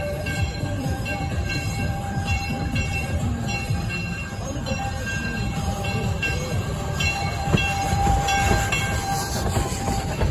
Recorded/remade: remade